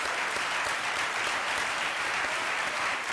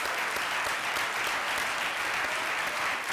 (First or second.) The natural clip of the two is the second